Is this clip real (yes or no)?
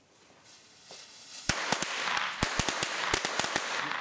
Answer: yes